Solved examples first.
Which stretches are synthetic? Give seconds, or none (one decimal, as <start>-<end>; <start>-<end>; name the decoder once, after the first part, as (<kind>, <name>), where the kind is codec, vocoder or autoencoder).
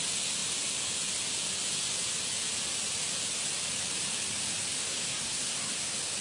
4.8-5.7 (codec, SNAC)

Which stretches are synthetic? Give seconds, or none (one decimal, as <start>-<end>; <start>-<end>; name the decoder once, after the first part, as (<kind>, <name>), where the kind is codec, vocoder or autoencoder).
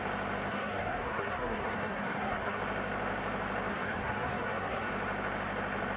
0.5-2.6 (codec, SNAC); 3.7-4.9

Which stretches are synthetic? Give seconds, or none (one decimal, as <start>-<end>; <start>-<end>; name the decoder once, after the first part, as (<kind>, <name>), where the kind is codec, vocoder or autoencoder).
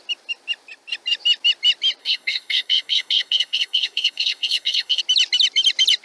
2.0-5.0 (codec, SNAC)